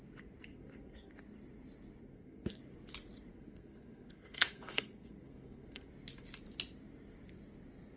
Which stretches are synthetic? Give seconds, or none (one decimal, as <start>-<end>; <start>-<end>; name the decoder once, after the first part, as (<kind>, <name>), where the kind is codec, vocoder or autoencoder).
0.5-1.2 (codec, SNAC); 2.0-2.6; 3.3-5.9